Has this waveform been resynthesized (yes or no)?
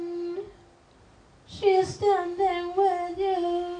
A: no